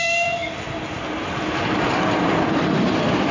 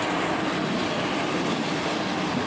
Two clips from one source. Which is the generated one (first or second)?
first